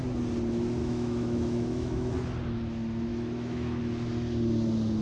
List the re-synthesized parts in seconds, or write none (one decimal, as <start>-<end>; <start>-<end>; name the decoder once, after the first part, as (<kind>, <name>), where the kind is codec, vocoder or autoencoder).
0.8-2.1 (autoencoder, DAC-VAE); 3.1-3.8